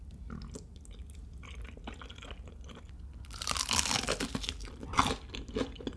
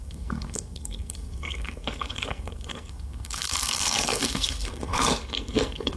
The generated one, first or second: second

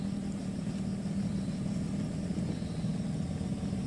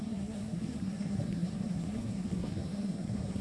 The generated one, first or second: second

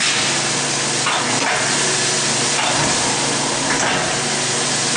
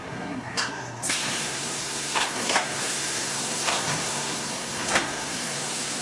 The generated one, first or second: second